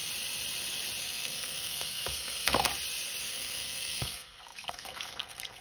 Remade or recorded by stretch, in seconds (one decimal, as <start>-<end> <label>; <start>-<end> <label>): 0.0-1.0 recorded; 1.0-2.7 remade; 2.7-3.3 recorded; 3.3-5.6 remade